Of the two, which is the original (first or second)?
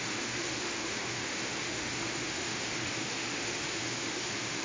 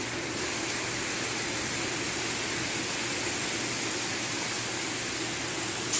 second